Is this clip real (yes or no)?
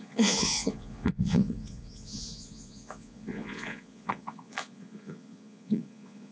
no